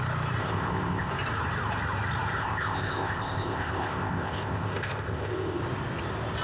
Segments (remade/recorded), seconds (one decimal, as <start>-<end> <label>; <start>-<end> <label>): 0.0-0.4 recorded; 0.4-1.1 remade; 1.1-2.4 recorded; 2.4-5.6 remade; 5.6-6.4 recorded